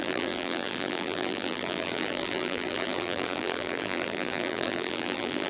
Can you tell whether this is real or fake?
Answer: fake